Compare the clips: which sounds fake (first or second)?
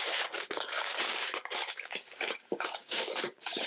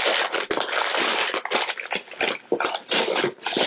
first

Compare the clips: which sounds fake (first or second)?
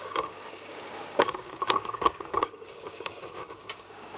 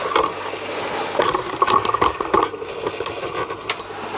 first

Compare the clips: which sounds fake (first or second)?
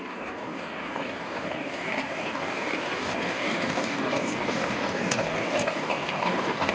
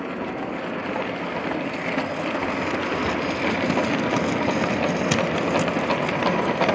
first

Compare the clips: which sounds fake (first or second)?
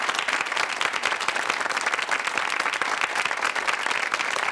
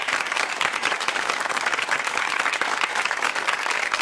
second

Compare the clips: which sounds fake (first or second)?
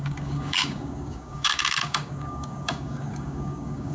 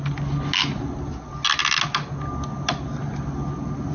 first